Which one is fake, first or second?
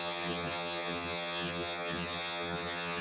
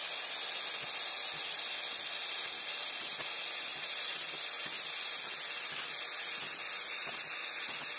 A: first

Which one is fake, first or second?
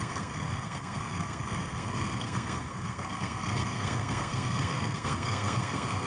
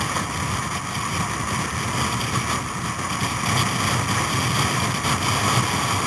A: first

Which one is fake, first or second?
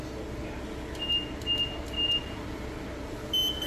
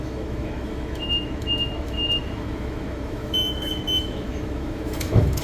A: second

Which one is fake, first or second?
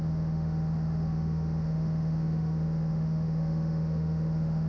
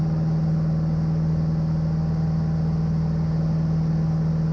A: first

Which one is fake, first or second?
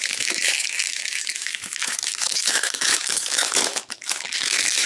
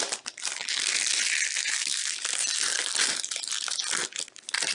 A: first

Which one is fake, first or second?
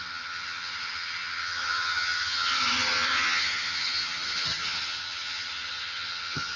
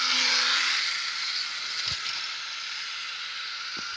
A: first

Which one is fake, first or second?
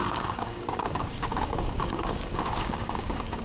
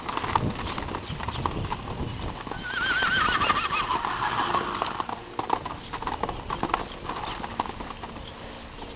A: first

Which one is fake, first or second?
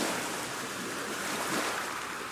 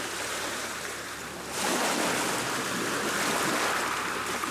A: first